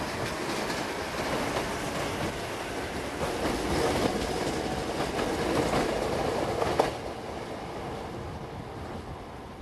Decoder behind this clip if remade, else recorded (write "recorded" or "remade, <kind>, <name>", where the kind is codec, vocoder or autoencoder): recorded